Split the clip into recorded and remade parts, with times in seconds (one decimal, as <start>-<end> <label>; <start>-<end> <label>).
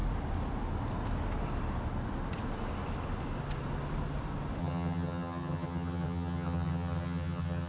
0.0-4.6 recorded; 4.6-7.7 remade